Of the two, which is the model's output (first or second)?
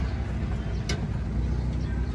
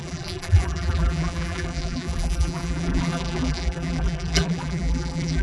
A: second